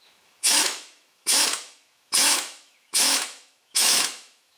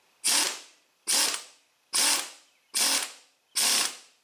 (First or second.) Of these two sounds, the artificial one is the first